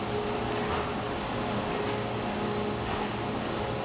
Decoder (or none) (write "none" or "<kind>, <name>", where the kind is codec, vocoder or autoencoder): none